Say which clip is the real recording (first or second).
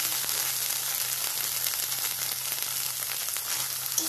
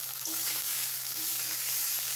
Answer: first